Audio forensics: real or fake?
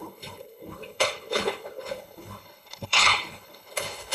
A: fake